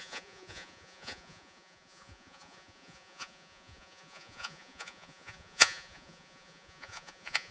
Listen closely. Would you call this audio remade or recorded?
remade